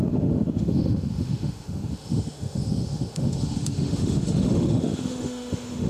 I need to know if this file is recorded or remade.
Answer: remade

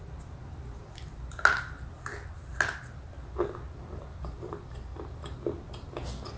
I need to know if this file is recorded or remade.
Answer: recorded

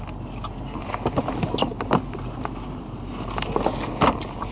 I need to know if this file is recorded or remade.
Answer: recorded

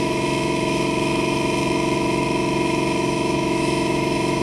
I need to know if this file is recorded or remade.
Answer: remade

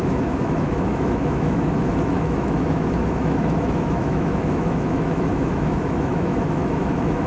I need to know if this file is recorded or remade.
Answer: remade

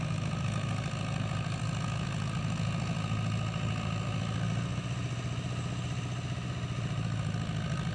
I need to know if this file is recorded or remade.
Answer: recorded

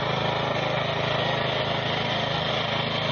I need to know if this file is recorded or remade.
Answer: recorded